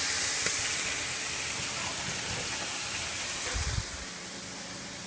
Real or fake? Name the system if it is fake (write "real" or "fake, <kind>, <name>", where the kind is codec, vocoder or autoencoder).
real